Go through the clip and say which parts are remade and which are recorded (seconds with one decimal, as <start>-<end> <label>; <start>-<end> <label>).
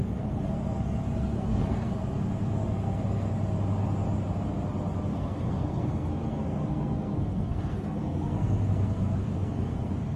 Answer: 0.0-3.3 remade; 3.3-5.1 recorded; 5.1-10.2 remade